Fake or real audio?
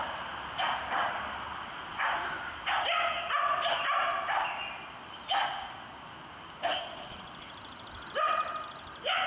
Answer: real